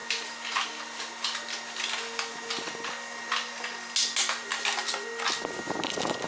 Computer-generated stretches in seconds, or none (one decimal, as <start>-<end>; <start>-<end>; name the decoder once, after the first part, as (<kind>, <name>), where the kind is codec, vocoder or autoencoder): none